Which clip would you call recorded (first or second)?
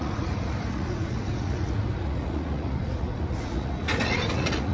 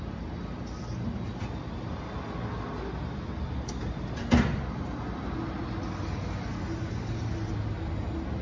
second